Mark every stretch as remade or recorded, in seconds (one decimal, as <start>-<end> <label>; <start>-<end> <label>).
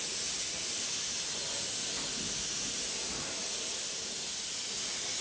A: 0.0-5.2 recorded